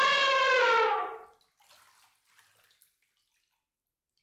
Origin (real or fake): real